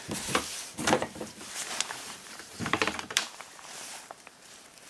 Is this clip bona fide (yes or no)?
no